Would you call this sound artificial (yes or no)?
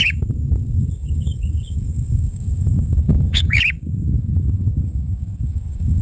yes